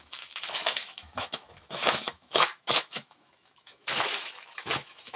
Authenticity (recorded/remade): remade